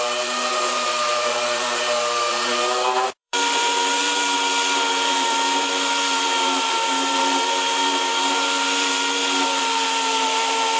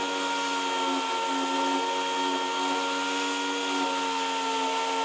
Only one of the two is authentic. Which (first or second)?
second